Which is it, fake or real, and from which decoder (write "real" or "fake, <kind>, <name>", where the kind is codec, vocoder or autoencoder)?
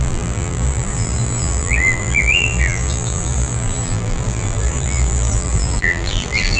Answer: fake, vocoder, BigVGAN v2